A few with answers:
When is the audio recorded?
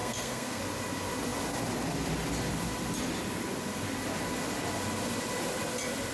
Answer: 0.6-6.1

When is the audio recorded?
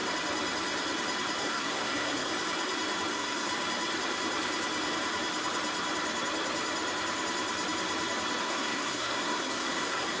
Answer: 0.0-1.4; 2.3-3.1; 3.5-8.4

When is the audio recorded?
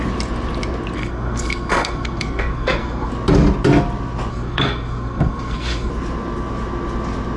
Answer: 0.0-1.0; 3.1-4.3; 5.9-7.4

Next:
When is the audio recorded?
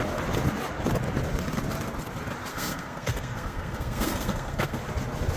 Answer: 0.0-2.5; 4.8-5.4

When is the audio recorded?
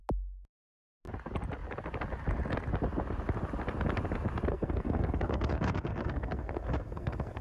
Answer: 0.0-4.5